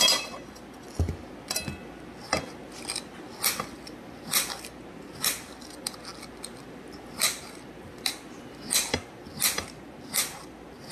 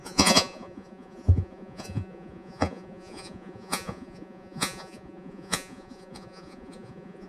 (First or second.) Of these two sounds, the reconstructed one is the second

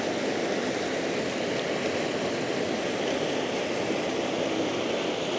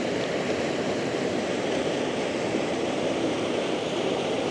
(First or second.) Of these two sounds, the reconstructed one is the second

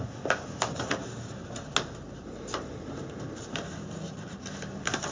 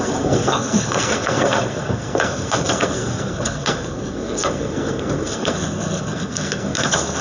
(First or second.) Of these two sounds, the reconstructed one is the second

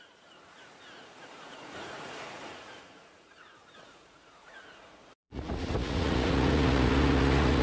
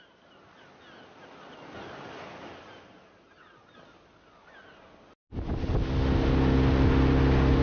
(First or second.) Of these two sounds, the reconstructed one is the first